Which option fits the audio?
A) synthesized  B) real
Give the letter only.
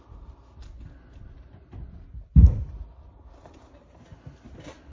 B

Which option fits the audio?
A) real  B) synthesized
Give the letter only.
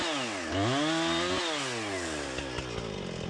A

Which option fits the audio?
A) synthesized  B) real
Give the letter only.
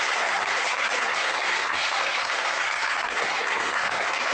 A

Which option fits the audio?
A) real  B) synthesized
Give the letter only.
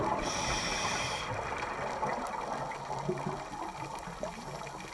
A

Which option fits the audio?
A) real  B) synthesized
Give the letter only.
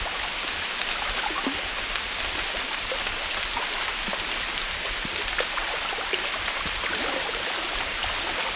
A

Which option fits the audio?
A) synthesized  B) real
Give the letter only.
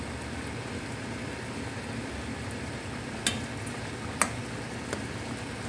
B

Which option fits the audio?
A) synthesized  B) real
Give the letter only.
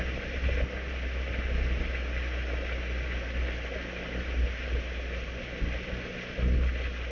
B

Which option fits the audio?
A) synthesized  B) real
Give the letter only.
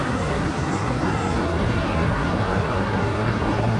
A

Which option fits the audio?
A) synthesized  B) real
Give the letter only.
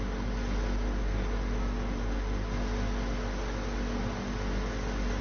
B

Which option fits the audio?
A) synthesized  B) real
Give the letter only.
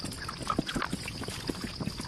B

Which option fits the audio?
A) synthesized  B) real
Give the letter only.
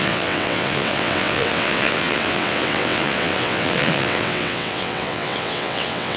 A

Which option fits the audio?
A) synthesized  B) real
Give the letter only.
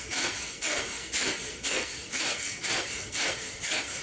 A